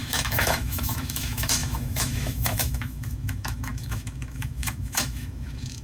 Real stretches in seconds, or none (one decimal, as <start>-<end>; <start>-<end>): none

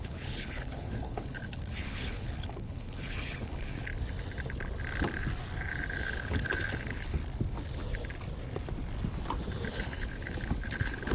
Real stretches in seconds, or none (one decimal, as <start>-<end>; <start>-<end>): 3.9-6.0; 7.2-9.7

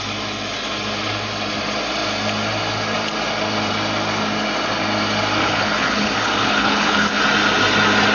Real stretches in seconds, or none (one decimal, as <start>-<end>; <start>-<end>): 0.0-5.4; 7.2-8.1

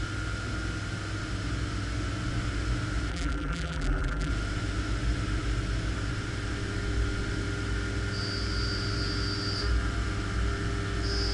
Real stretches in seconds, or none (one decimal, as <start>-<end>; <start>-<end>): 0.0-3.1; 4.3-11.3